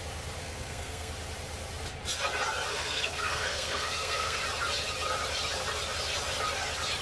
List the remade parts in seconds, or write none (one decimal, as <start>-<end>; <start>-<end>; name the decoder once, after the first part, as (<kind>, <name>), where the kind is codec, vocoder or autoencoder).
0.4-1.1 (codec, SNAC); 2.7-4.4